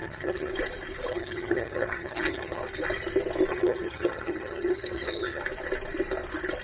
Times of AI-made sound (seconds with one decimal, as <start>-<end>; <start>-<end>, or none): 0.0-0.5; 1.1-2.6; 3.5-5.4